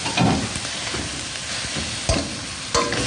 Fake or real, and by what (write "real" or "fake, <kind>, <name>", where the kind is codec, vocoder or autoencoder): real